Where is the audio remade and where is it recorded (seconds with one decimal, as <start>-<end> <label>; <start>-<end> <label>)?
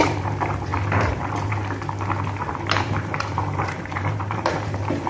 0.0-1.6 remade; 1.6-2.5 recorded; 2.5-5.1 remade